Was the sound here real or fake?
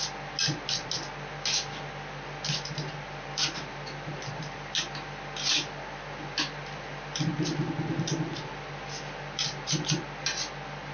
real